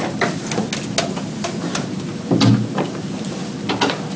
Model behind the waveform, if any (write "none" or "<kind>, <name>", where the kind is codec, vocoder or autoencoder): none